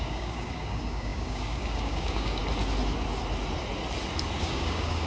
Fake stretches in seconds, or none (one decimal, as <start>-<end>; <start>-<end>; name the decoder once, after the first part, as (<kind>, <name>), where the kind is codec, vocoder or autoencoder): 0.0-2.4 (codec, DAC); 4.4-5.1